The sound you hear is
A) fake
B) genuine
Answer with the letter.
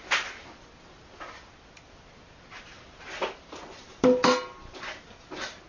B